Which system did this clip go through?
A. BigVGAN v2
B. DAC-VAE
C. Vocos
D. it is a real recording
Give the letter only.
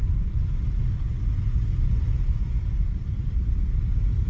D